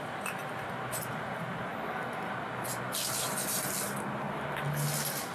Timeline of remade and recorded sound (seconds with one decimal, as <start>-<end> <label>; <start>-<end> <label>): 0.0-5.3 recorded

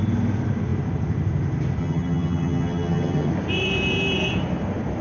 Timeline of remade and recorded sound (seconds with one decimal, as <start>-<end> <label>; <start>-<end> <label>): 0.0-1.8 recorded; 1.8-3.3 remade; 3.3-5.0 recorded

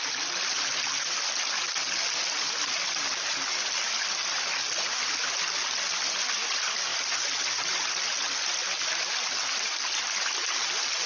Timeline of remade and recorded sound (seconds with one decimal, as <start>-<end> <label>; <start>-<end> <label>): 0.0-11.1 recorded